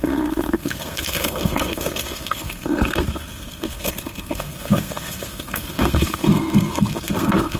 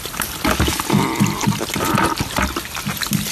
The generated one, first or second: first